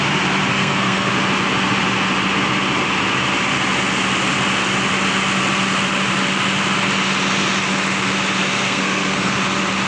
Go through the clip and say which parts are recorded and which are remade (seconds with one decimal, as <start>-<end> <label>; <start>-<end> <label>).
0.0-0.5 recorded; 0.5-1.1 remade; 1.1-8.4 recorded; 8.4-9.3 remade; 9.3-9.9 recorded